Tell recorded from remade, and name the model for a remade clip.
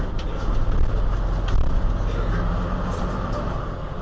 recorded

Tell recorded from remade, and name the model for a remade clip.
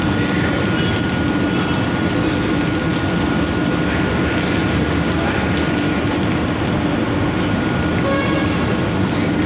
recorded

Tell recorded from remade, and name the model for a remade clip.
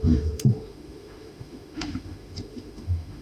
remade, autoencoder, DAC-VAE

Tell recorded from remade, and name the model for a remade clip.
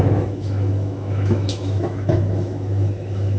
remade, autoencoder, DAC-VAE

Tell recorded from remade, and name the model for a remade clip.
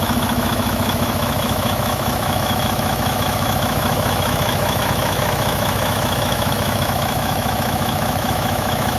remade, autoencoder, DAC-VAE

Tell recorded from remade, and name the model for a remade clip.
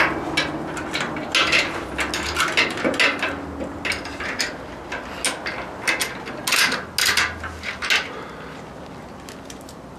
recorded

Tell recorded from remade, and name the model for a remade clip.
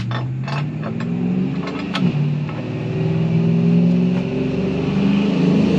recorded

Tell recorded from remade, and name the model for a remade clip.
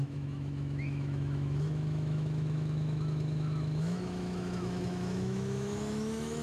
remade, autoencoder, DAC-VAE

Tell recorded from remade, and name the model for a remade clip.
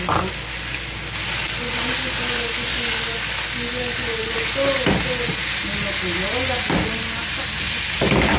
recorded